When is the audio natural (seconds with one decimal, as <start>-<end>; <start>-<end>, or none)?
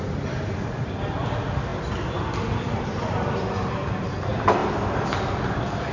0.0-5.9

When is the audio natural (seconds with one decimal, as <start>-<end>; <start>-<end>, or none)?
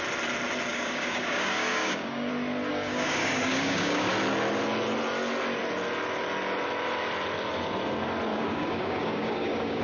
0.0-0.7; 2.3-2.7; 4.1-8.3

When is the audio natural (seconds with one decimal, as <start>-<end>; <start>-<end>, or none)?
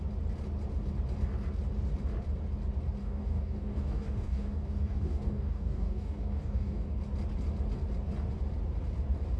0.0-3.0; 7.0-9.4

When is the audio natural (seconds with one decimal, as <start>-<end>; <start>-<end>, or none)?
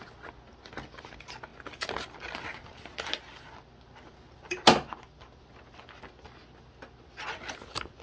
0.0-8.0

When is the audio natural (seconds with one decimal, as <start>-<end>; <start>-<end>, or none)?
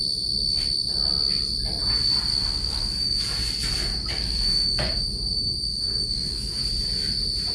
0.0-2.3; 3.2-3.9; 6.6-7.5